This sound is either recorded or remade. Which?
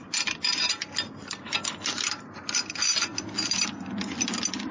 recorded